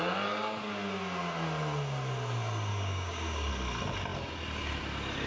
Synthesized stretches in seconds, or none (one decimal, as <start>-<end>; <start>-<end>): 2.7-3.5